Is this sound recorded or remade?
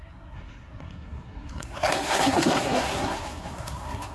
remade